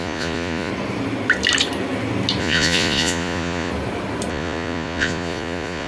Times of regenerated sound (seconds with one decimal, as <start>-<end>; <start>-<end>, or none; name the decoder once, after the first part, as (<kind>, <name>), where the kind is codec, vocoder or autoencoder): 0.0-0.7 (vocoder, Vocos); 2.4-3.7; 4.3-5.9